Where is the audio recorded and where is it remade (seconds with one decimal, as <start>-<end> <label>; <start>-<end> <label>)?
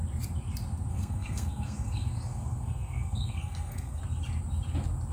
0.0-0.9 recorded; 0.9-4.0 remade; 4.0-5.1 recorded